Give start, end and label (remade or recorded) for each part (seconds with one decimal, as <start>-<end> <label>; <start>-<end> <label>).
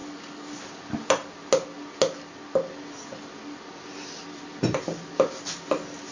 0.0-0.6 remade; 0.6-6.1 recorded